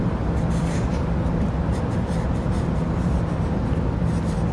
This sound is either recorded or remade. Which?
recorded